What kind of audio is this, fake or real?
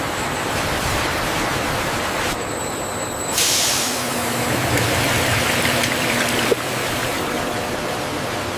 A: fake